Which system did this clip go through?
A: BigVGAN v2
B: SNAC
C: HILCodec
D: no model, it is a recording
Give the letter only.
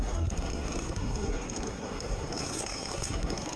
B